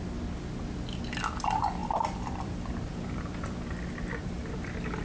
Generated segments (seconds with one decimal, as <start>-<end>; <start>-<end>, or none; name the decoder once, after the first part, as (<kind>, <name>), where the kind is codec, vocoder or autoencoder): 1.8-5.0 (vocoder, BigVGAN v2)